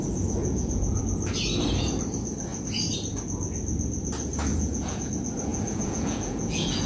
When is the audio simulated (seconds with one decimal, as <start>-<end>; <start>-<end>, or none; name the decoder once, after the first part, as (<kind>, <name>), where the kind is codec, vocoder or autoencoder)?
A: 0.4-1.0 (vocoder, Vocos); 4.5-5.1; 5.5-6.9